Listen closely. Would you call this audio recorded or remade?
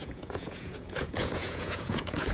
remade